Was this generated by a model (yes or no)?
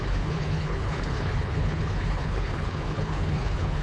yes